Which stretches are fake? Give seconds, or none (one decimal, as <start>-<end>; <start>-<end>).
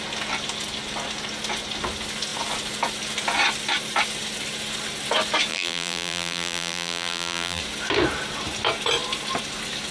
5.5-7.6